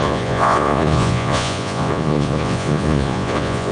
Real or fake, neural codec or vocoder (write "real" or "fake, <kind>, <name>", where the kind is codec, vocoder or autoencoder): fake, vocoder, Vocos